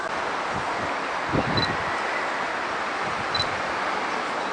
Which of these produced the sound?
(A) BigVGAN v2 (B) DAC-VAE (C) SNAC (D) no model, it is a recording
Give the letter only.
D